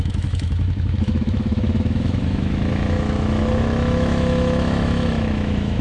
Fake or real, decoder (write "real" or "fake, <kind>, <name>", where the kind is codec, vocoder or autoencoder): fake, autoencoder, DAC-VAE